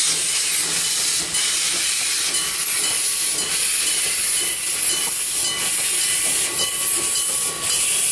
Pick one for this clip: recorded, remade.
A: recorded